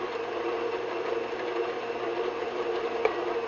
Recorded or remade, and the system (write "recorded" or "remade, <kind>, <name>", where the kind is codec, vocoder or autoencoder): recorded